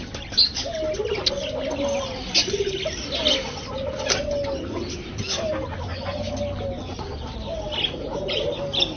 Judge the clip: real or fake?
real